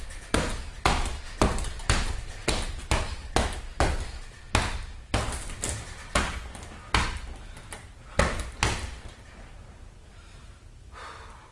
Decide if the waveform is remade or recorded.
recorded